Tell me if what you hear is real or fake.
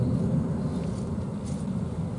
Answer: real